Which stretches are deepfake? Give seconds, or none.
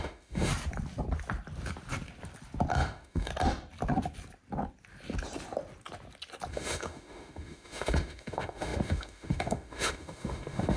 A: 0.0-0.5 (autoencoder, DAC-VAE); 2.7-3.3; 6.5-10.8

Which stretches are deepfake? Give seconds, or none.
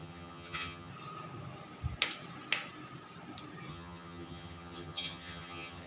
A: 0.0-0.9 (vocoder, HiFi-GAN); 3.7-5.9